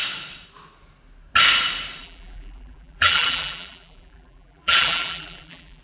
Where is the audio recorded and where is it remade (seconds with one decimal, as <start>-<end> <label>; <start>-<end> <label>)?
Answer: 0.0-2.0 recorded; 2.0-5.8 remade